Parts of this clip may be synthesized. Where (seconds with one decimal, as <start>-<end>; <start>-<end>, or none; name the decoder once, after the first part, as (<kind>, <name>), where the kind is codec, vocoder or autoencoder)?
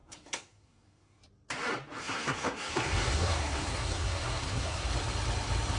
0.0-1.2 (codec, SNAC); 2.0-4.9